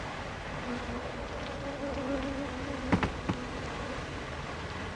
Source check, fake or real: real